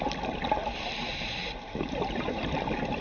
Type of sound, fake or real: real